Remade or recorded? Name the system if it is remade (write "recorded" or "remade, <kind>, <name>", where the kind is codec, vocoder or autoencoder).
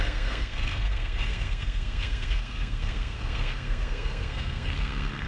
remade, codec, SNAC